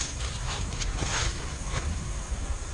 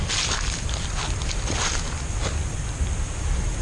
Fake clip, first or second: first